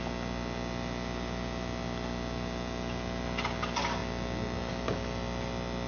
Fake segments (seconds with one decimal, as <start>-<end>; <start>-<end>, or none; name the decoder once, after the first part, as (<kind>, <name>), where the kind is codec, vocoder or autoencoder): none